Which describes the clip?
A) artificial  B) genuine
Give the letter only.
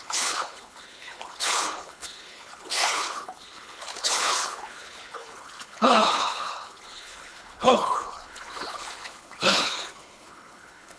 A